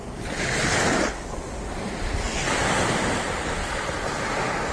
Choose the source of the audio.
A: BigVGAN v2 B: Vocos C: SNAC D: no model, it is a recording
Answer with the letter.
D